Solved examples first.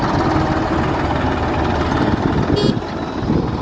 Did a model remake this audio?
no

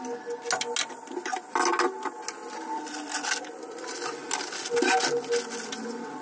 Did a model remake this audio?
no